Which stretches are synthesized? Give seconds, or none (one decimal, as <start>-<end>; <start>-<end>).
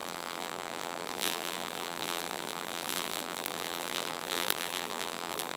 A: 0.0-5.6